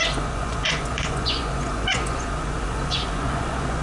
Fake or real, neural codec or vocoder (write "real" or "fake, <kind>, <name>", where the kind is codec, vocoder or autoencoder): fake, vocoder, Vocos